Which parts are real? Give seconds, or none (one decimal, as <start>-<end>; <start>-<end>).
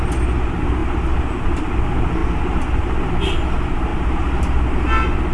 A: 0.0-5.3